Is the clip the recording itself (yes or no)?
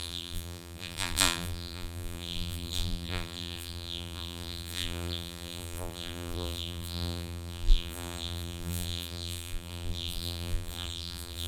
no